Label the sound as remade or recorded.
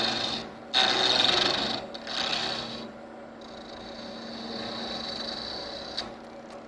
recorded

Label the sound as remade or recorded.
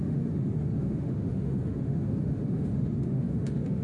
remade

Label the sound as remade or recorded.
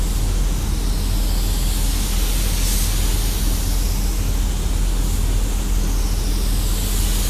recorded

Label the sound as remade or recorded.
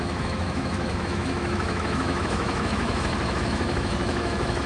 remade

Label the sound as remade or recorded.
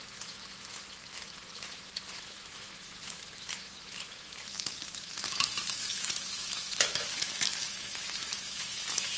remade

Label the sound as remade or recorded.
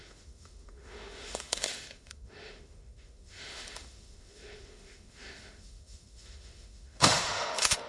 remade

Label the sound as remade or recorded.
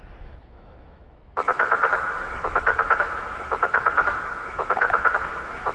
remade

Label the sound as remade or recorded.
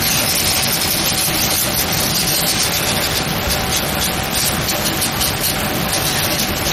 recorded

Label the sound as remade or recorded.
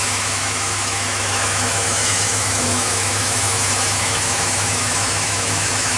remade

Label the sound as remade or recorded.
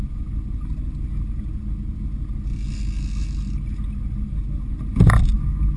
recorded